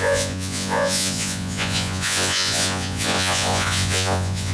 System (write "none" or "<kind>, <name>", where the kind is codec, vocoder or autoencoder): vocoder, Vocos